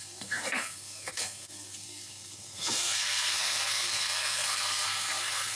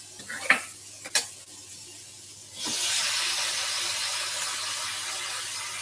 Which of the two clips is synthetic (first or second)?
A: first